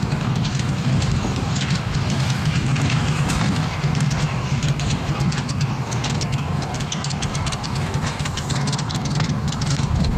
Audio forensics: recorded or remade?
remade